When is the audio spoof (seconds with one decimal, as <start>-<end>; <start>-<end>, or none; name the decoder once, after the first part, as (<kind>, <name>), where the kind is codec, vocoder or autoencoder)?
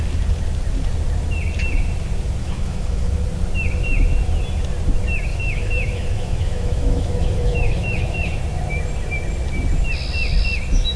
2.4-3.1 (autoencoder, DAC-VAE); 5.3-8.4